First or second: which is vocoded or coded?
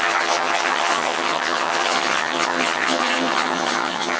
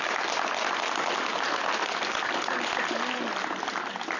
first